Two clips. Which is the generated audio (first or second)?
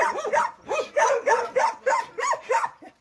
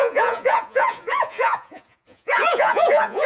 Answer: second